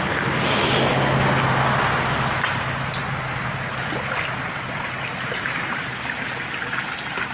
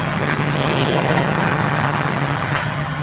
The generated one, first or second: second